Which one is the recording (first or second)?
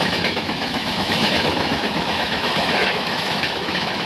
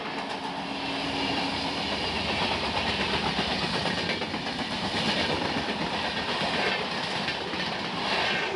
second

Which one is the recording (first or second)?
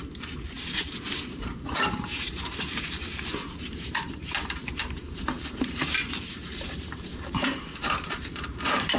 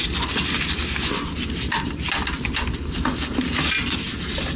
second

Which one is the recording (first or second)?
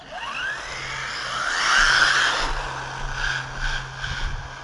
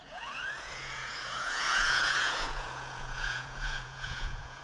first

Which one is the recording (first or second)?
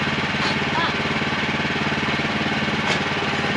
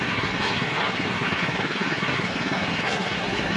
first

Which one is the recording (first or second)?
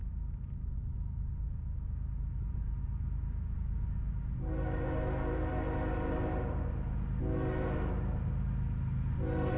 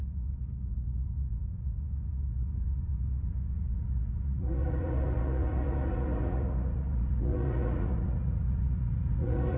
first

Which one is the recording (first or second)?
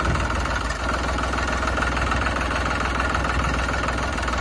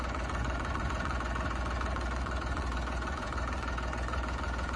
first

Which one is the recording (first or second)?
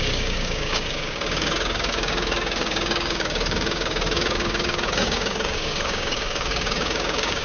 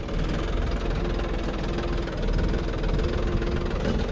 second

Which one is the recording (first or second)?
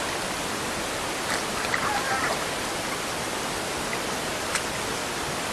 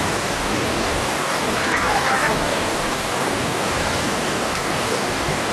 first